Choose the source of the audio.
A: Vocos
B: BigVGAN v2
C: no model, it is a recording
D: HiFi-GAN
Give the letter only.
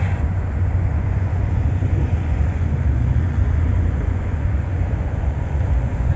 A